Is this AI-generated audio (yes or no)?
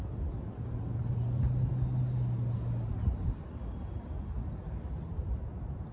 no